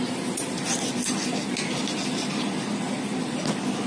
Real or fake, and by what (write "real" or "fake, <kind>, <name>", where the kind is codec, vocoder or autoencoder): real